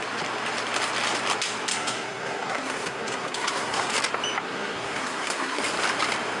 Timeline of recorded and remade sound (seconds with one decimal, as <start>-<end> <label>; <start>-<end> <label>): 0.0-1.7 recorded; 1.7-3.9 remade; 3.9-4.4 recorded; 4.4-5.6 remade; 5.6-6.4 recorded